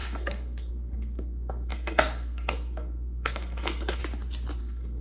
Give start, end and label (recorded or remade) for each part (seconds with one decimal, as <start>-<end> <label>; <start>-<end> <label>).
0.0-4.0 remade; 4.0-4.6 recorded; 4.6-5.0 remade